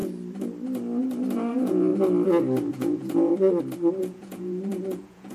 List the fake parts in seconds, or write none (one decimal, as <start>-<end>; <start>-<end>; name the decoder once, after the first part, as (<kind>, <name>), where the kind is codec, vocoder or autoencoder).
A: 1.5-1.9 (vocoder, Vocos); 2.7-3.3; 4.0-5.3